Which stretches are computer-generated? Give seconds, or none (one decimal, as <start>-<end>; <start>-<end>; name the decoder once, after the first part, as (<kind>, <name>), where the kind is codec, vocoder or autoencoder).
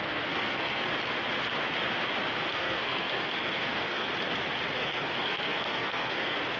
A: 0.0-0.9 (codec, SNAC); 2.5-4.1; 4.7-6.6